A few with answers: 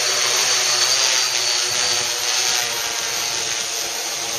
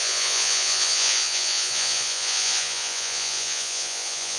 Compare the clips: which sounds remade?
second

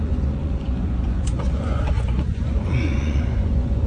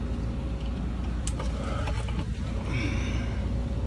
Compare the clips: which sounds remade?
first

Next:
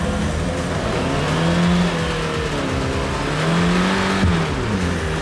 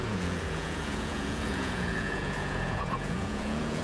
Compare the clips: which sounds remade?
second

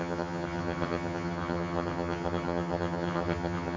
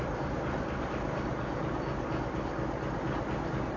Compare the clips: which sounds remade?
first